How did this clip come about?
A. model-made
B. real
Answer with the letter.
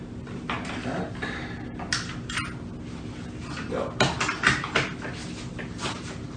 B